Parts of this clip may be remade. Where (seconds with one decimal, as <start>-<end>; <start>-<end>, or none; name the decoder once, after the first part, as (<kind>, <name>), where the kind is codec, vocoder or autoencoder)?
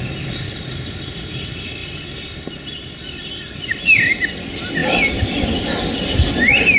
1.8-3.2 (vocoder, BigVGAN v2); 4.8-6.8